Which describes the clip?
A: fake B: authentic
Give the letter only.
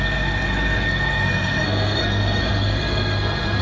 A